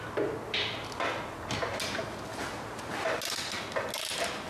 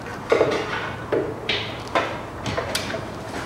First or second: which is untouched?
first